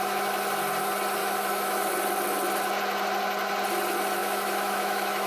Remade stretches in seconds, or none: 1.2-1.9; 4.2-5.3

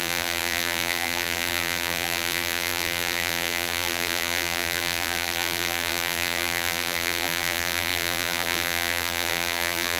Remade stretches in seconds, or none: 0.0-10.0

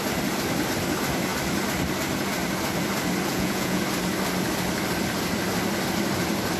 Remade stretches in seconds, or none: 3.3-3.8

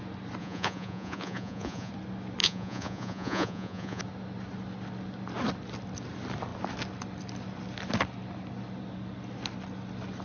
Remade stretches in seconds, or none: 0.4-1.9; 2.4-4.0

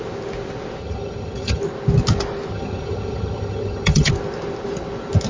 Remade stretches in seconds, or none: 0.8-1.6; 2.5-4.1

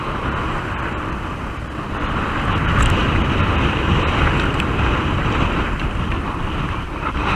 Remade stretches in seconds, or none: none

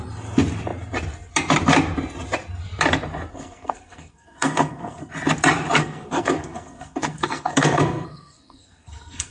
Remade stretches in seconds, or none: 3.3-5.1; 5.8-9.3